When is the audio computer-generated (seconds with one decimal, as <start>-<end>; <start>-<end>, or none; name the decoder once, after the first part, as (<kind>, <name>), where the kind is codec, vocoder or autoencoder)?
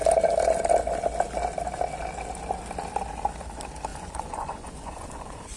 3.9-5.6 (vocoder, Vocos)